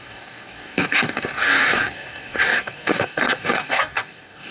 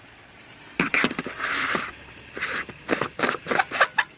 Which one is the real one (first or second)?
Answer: second